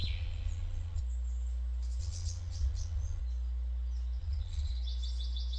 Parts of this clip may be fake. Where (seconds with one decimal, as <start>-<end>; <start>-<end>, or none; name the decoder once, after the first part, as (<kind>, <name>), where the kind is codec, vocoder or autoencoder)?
0.0-1.0 (vocoder, Vocos); 2.0-3.2; 4.2-4.7